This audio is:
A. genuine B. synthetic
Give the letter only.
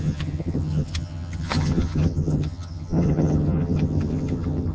B